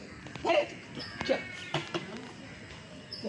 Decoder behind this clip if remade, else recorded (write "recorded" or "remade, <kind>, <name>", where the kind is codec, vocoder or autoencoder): recorded